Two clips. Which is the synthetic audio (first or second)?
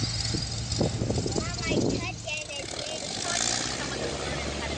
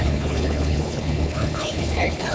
second